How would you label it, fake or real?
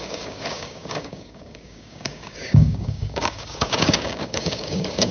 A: fake